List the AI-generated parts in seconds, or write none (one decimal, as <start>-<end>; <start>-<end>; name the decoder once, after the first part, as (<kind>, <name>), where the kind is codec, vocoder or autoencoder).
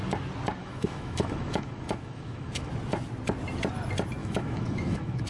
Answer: 0.6-2.7 (autoencoder, DAC-VAE); 4.2-5.3